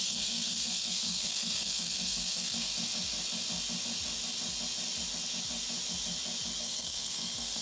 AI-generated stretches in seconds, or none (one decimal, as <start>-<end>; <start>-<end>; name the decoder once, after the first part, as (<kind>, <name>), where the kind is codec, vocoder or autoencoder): 0.0-2.7 (codec, SNAC); 6.6-7.6